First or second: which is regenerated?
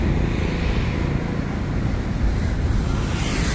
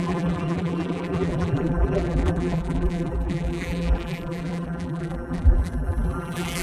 second